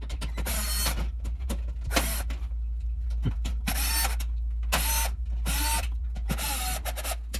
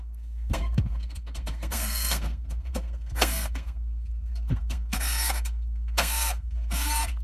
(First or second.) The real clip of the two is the first